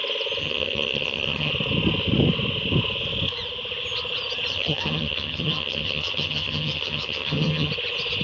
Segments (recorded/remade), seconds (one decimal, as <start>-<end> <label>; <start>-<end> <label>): 0.0-0.4 recorded; 0.4-1.5 remade; 1.5-4.5 recorded; 4.5-7.7 remade; 7.7-8.2 recorded